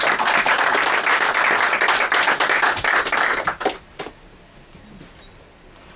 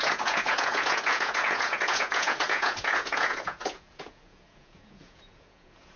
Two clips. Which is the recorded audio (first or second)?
first